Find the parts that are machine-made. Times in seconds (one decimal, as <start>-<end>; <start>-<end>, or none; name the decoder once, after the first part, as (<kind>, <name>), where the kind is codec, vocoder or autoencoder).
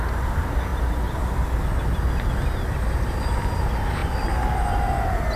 none